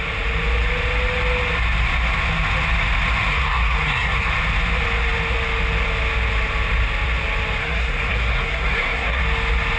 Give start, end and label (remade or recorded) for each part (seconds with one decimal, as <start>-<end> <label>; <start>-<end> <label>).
0.0-3.3 recorded; 3.3-4.3 remade; 4.3-7.6 recorded; 7.6-9.2 remade; 9.2-9.8 recorded